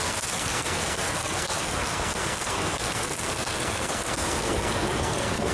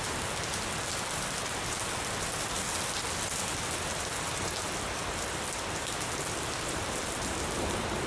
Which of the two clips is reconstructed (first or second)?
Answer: first